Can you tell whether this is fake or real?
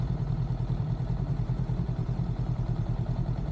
fake